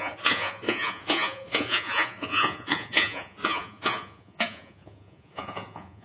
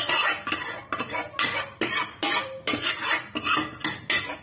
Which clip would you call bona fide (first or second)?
second